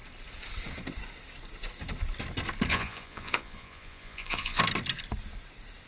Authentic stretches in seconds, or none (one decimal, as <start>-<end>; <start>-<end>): 0.0-2.7; 4.6-5.9